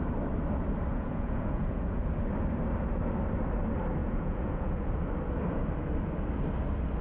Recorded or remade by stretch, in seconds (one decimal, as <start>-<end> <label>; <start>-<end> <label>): 0.0-0.9 recorded; 0.9-2.0 remade; 2.0-4.0 recorded; 4.0-4.9 remade; 4.9-7.0 recorded